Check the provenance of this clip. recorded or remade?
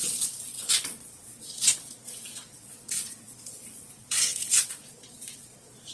remade